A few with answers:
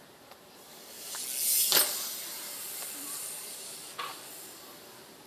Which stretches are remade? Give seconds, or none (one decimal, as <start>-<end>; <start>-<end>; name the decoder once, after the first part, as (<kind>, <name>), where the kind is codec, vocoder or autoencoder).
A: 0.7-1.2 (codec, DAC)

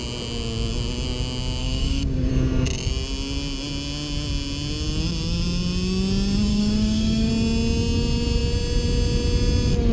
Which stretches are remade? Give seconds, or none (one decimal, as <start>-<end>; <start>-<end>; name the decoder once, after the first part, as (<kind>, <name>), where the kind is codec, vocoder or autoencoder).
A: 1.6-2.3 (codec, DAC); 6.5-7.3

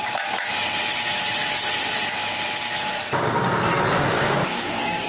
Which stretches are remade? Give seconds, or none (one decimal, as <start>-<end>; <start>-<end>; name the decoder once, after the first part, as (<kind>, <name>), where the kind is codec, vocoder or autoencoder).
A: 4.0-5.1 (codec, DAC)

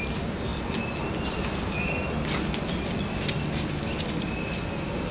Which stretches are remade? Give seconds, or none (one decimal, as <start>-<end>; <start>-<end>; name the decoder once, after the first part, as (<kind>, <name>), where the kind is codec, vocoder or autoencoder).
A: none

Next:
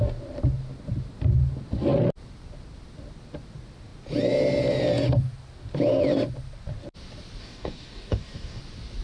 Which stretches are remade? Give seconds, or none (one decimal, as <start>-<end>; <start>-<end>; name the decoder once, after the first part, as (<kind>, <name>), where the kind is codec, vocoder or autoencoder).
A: 7.4-8.6 (codec, DAC)

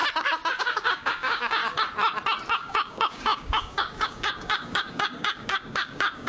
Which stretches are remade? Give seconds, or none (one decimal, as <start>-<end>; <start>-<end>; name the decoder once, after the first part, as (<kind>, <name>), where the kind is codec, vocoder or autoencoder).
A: 0.6-1.6 (codec, DAC); 2.5-6.3

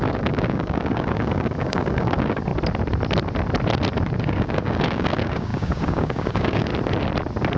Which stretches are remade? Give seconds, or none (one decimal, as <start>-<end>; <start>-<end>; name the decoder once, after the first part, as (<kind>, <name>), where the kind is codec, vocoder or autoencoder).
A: 0.0-2.5 (codec, DAC); 4.2-6.7

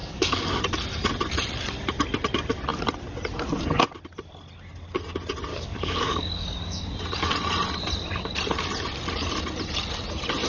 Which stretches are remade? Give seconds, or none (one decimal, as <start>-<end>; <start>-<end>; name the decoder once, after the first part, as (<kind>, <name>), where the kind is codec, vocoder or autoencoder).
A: 0.0-0.6 (codec, DAC); 5.5-6.8